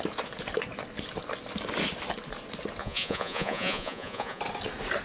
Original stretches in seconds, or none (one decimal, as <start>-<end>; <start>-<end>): 0.0-2.8; 4.4-5.0